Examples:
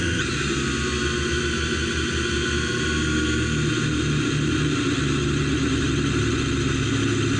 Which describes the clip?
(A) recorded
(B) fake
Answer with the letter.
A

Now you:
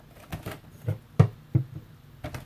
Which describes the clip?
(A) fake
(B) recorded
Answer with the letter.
B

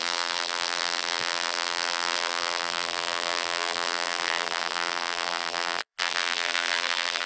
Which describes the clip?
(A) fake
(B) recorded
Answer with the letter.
A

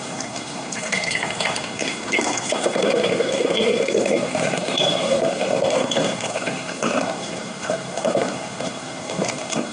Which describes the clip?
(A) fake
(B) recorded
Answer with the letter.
A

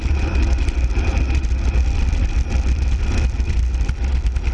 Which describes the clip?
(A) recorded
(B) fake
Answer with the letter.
A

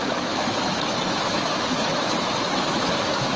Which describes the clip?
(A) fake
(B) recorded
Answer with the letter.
A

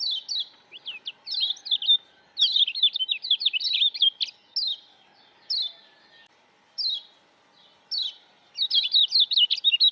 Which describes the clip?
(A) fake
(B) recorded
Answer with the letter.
B